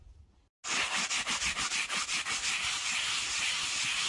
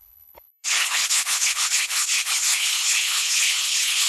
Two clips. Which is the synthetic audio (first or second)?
second